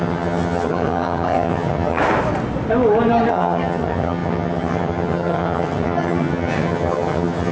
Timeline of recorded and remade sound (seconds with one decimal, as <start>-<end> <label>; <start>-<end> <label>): 0.0-2.0 remade; 2.0-3.3 recorded; 3.3-7.5 remade